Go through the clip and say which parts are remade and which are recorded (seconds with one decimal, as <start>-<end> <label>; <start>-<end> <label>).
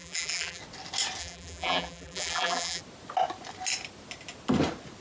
0.0-0.6 remade; 0.6-1.2 recorded; 1.2-2.8 remade; 2.8-5.0 recorded